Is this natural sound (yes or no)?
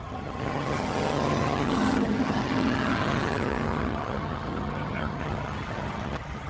no